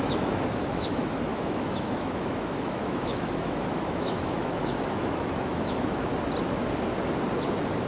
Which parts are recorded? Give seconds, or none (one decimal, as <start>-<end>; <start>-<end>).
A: 6.1-7.9